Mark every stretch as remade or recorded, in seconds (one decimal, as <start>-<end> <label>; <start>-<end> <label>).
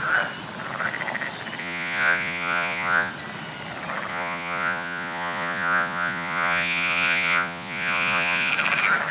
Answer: 0.0-1.6 recorded; 1.6-3.1 remade; 3.1-4.1 recorded; 4.1-8.5 remade; 8.5-9.1 recorded